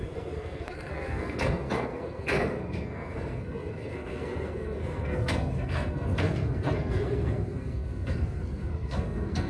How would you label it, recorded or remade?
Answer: remade